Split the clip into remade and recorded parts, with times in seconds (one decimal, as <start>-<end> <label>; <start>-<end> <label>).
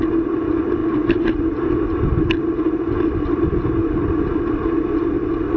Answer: 0.0-5.6 recorded